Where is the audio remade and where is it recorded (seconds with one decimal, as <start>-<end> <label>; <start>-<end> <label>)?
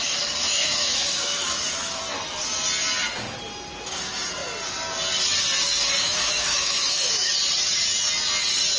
0.0-0.4 recorded; 0.4-2.0 remade; 2.0-6.0 recorded; 6.0-7.3 remade; 7.3-8.8 recorded